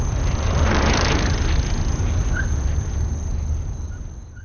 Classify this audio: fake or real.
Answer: real